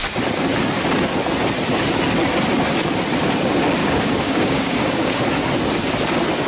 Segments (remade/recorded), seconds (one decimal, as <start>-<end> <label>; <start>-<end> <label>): 0.0-3.8 recorded; 3.8-5.2 remade; 5.2-6.5 recorded